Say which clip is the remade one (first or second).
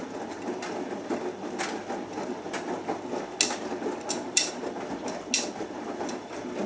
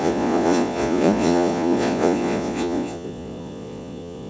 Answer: second